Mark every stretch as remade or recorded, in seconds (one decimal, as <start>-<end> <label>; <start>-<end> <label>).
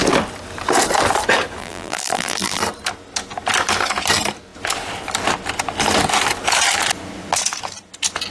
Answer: 0.0-1.6 recorded; 1.6-2.6 remade; 2.6-8.3 recorded